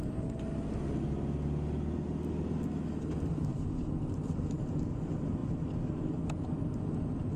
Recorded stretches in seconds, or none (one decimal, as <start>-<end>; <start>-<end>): 0.0-7.4

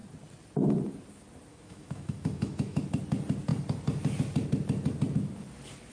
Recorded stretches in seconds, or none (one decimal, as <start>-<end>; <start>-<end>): 0.0-1.5; 2.8-5.9

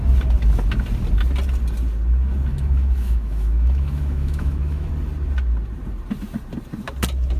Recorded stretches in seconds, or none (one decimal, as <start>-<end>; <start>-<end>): 0.0-2.5; 4.9-7.4

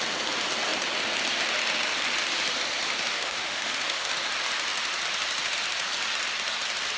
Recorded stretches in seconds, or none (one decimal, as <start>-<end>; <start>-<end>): 0.0-3.1; 4.1-7.0

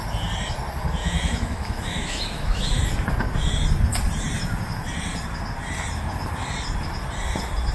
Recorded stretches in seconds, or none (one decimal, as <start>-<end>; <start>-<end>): 0.0-1.0; 2.8-7.7